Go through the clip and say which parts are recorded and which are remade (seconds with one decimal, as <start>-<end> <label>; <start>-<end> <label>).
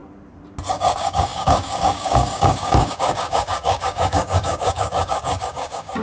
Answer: 0.0-0.7 recorded; 0.7-6.0 remade